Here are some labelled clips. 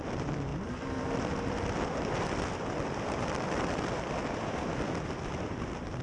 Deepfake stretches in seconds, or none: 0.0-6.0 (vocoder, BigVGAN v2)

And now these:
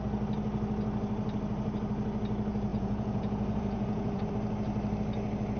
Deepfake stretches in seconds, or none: 2.7-4.3 (vocoder, Vocos)

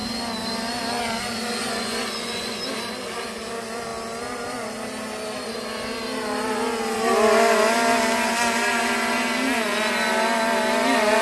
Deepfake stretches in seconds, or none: 1.6-2.6 (vocoder, Vocos)

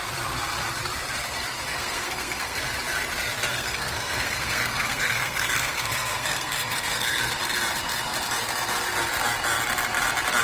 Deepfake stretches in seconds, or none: 1.7-2.6 (codec, SNAC); 3.5-7.3